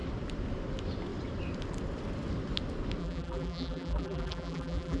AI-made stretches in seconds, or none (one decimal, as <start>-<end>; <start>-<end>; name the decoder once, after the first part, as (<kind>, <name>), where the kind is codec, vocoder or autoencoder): 3.0-5.0 (vocoder, BigVGAN v2)